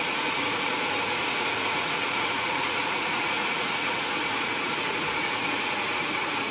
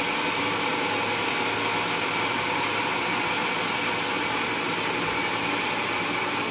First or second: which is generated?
first